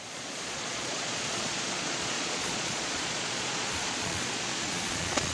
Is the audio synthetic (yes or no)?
yes